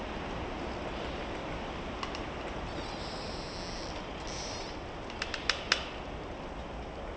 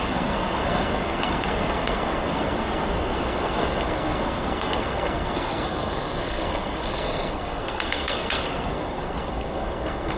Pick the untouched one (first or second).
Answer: first